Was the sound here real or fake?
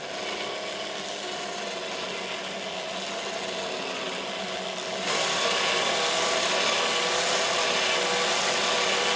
real